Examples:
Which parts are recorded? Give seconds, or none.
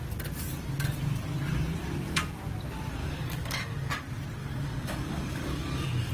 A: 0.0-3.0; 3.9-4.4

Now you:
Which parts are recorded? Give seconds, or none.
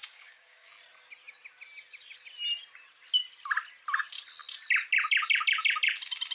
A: 0.7-6.3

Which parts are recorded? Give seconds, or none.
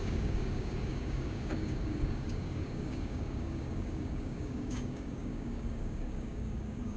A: none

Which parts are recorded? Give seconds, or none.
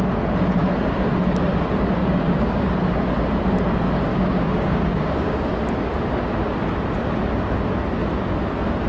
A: 0.0-2.0; 2.7-4.1; 5.5-8.9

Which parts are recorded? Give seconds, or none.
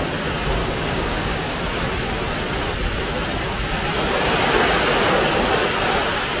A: 0.0-0.6; 1.6-6.4